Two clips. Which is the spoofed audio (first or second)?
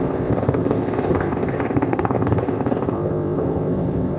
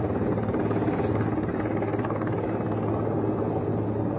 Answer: first